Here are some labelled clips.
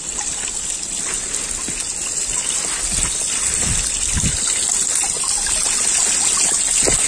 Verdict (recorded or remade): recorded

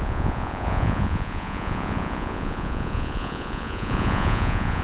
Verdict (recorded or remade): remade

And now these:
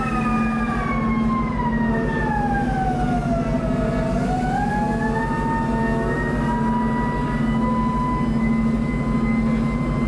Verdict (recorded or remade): recorded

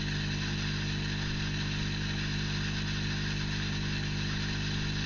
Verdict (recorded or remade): recorded